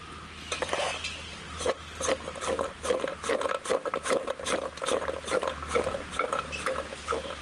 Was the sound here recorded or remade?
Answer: recorded